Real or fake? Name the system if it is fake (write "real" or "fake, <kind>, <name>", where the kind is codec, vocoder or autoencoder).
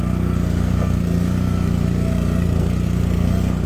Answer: fake, codec, SNAC